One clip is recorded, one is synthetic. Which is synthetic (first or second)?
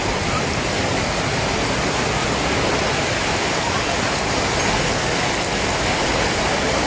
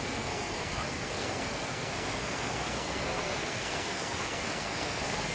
second